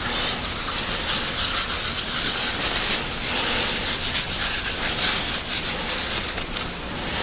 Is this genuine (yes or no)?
yes